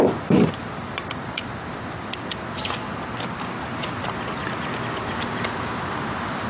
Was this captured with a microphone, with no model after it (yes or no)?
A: yes